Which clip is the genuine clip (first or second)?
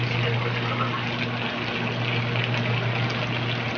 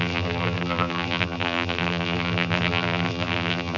first